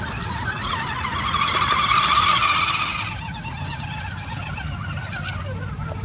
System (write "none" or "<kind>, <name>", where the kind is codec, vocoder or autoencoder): none